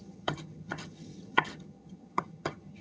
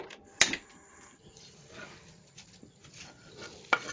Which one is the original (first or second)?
second